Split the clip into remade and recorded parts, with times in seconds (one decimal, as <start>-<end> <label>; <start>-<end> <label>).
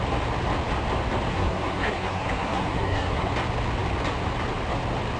0.0-1.3 recorded; 1.3-3.3 remade; 3.3-5.2 recorded